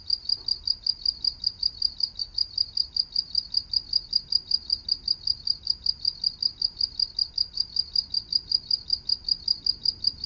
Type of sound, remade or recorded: recorded